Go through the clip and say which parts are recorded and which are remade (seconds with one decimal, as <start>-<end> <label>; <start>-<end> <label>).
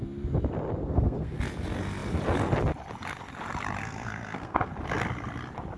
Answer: 0.0-0.8 recorded; 0.8-1.4 remade; 1.4-3.8 recorded; 3.8-4.7 remade; 4.7-5.8 recorded